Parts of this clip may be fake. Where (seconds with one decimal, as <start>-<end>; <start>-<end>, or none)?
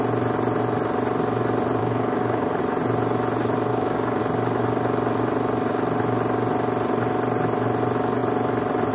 1.8-2.6; 3.7-4.2